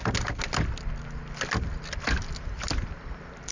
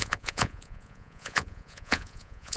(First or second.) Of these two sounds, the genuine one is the first